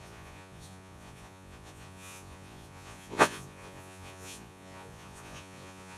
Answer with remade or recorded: remade